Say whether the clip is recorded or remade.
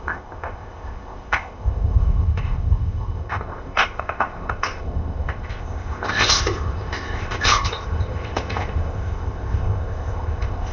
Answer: remade